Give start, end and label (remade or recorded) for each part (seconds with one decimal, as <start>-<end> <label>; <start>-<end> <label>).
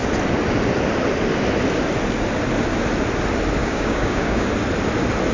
0.0-3.6 recorded; 3.6-4.5 remade; 4.5-5.3 recorded